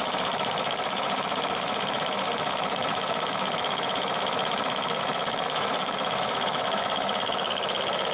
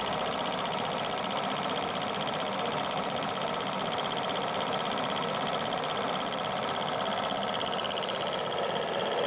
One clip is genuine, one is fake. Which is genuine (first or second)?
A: second